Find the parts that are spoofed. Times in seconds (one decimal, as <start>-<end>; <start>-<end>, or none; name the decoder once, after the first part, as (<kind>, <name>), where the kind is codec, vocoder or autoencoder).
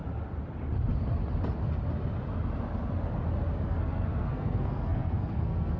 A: 3.5-5.8 (codec, SNAC)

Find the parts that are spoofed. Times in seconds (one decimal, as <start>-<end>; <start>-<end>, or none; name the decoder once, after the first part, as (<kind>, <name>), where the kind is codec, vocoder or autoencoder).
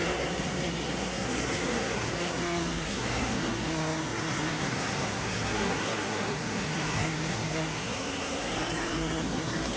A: 0.0-9.8 (codec, SNAC)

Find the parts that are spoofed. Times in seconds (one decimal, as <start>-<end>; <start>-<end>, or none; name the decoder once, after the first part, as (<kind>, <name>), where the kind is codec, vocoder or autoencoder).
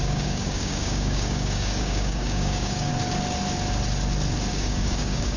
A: 0.0-2.9 (codec, DAC); 4.5-5.4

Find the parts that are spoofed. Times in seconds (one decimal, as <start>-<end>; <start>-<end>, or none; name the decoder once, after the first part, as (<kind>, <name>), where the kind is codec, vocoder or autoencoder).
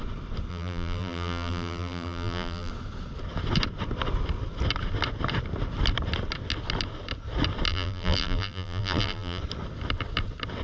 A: 0.5-2.7 (vocoder, BigVGAN v2); 7.7-9.4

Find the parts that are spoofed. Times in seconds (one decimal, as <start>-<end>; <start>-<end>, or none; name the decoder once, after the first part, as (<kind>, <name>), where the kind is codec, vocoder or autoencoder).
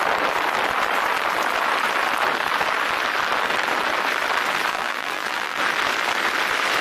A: 4.7-5.6 (vocoder, BigVGAN v2)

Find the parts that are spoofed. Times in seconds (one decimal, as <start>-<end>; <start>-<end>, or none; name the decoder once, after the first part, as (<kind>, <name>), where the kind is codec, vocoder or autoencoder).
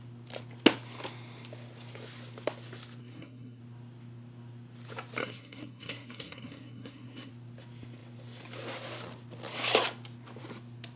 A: 3.0-3.6 (codec, SNAC); 5.2-7.3